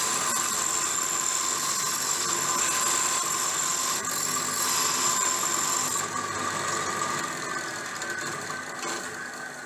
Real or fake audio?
real